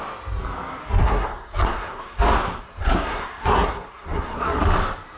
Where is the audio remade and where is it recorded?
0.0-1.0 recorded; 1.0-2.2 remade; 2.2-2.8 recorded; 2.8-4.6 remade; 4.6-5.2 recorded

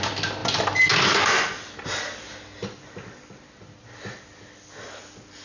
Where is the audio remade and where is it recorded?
0.0-5.4 recorded